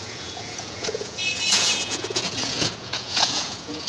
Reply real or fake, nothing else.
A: fake